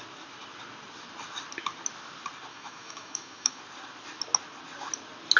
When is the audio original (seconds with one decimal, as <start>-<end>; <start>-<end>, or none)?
0.0-2.5; 3.6-5.4